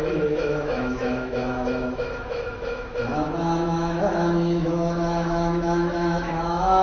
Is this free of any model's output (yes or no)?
no